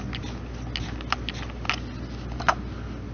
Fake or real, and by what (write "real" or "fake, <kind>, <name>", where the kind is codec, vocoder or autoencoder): real